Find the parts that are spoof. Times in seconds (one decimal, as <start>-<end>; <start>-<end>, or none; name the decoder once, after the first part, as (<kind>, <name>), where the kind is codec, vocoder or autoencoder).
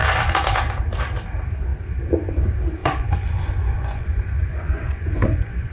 2.8-5.7 (vocoder, Vocos)